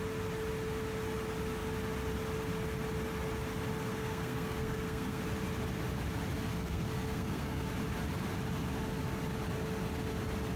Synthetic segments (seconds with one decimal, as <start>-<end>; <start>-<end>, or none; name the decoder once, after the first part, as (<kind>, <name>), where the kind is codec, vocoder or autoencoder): 3.9-5.2 (codec, SNAC); 6.5-7.7